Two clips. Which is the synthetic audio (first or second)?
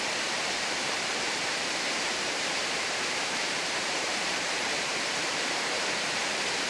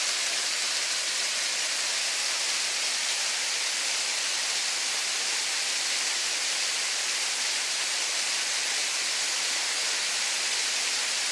first